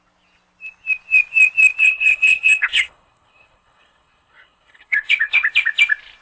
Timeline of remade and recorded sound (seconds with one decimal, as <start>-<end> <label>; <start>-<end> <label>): 0.0-1.8 recorded; 1.8-5.5 remade; 5.5-6.2 recorded